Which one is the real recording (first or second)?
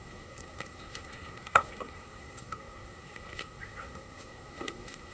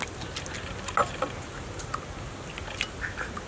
second